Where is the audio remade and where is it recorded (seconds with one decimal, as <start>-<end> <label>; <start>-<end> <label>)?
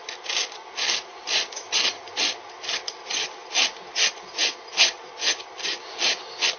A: 0.0-3.1 recorded; 3.1-3.8 remade; 3.8-6.6 recorded